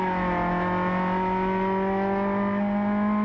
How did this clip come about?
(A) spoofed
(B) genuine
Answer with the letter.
B